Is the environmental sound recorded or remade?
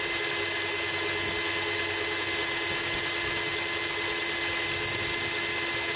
recorded